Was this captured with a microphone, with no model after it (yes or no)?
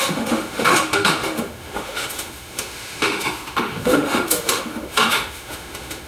no